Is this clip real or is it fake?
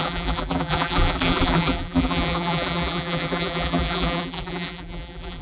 fake